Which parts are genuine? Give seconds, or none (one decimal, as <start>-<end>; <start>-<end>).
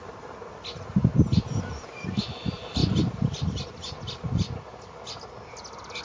0.0-6.0